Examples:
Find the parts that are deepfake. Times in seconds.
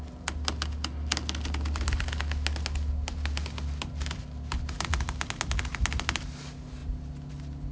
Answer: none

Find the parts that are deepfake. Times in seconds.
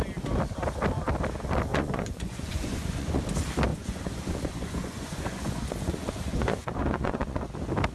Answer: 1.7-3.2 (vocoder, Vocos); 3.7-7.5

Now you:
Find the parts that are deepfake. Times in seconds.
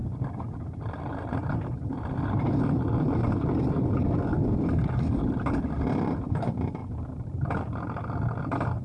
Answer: 0.0-2.6 (vocoder, BigVGAN v2); 6.8-7.5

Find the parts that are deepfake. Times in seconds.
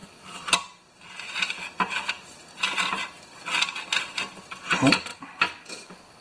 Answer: none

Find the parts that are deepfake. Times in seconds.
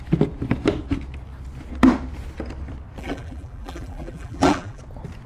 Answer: 3.0-4.8 (vocoder, BigVGAN v2)